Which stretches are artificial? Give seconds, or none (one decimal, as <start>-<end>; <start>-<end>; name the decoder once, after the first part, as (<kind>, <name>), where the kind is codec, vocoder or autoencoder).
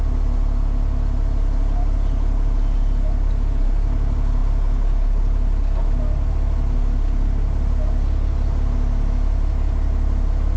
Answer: none